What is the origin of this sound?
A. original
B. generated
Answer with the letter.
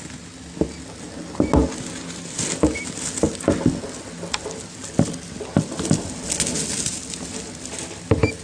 A